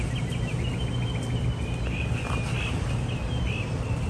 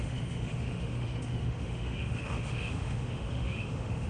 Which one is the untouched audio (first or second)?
first